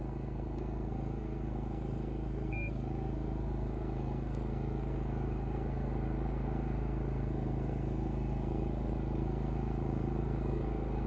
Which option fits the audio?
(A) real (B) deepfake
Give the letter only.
B